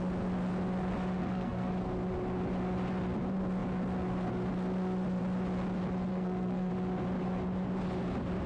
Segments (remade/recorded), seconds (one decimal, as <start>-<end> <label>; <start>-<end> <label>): 0.0-1.2 recorded; 1.2-1.7 remade; 1.7-6.1 recorded; 6.1-6.7 remade; 6.7-8.5 recorded